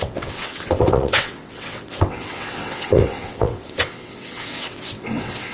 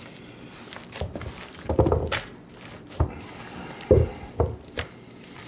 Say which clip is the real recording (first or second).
second